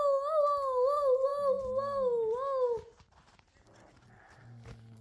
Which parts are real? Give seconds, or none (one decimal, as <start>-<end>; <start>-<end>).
0.0-5.0

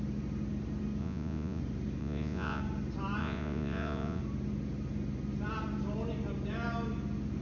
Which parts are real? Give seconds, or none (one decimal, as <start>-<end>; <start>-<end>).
0.0-1.0; 1.6-2.0; 2.6-3.2; 4.2-7.4

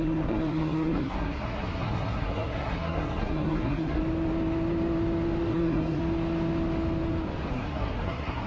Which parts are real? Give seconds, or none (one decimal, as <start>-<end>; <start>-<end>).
4.0-5.5; 6.0-7.5

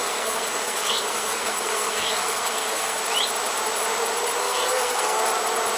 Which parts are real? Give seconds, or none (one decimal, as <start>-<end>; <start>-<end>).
3.0-4.4; 5.2-5.8